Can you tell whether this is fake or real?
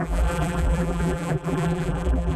fake